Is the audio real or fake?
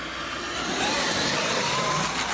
real